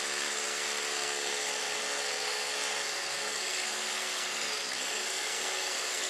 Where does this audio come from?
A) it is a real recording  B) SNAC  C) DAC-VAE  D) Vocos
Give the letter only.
B